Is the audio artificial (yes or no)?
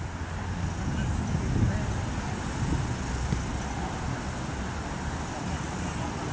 no